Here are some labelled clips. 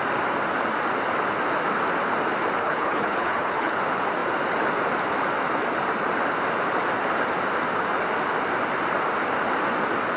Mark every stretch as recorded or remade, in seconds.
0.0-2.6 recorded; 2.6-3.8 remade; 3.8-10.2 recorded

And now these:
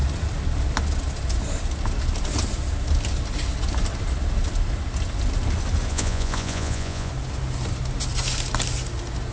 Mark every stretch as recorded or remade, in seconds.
0.0-5.9 recorded; 5.9-7.1 remade; 7.1-9.3 recorded

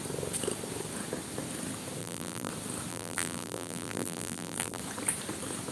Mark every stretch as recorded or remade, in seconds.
0.0-2.0 recorded; 2.0-2.5 remade; 2.5-2.9 recorded; 2.9-4.8 remade; 4.8-5.7 recorded